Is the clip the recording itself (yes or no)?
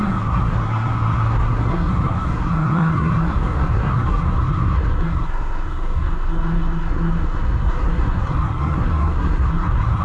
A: no